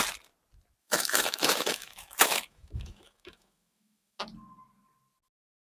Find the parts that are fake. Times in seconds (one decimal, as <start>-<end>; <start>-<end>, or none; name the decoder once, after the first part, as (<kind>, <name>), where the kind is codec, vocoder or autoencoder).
0.8-4.2 (autoencoder, DAC-VAE)

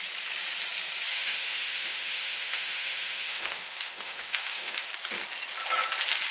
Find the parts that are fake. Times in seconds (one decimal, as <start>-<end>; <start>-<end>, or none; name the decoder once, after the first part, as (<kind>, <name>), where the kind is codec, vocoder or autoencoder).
1.1-4.9 (autoencoder, DAC-VAE)

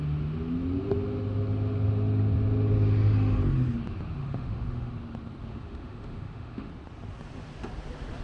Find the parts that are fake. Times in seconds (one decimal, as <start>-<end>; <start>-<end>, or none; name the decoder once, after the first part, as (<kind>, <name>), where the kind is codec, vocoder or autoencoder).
4.2-4.9 (autoencoder, DAC-VAE); 5.5-6.7

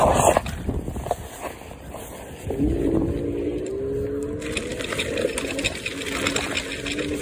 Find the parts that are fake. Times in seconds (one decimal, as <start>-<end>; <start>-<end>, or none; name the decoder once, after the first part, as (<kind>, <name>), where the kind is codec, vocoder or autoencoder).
none

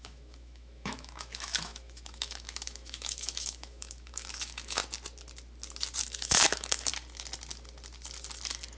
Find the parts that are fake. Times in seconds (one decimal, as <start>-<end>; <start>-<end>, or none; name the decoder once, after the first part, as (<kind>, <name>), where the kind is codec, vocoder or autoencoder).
0.0-4.8 (autoencoder, DAC-VAE); 6.0-6.9

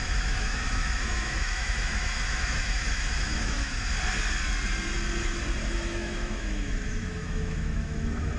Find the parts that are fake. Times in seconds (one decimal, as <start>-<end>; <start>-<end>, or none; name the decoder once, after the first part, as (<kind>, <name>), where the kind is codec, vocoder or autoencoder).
0.0-3.9 (autoencoder, DAC-VAE); 5.6-8.4